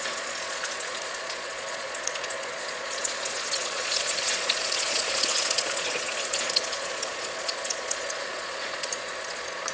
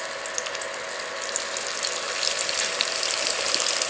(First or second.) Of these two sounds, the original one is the second